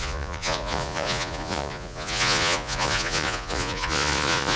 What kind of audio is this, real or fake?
fake